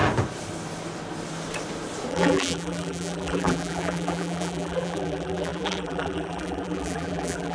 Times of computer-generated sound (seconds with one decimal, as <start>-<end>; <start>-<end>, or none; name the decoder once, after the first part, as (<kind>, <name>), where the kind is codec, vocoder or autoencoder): 2.1-7.5 (vocoder, BigVGAN v2)